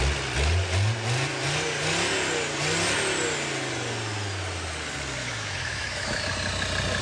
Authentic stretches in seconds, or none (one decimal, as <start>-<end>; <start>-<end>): 0.0-5.2; 6.2-7.0